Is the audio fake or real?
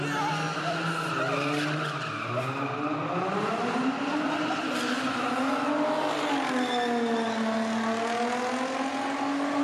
real